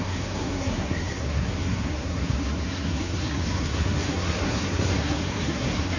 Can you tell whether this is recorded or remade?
remade